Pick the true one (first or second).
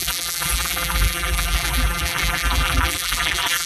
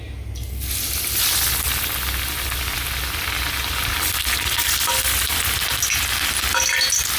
second